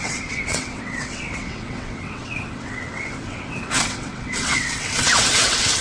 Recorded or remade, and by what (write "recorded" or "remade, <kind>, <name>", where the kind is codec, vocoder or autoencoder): remade, vocoder, WaveNeXt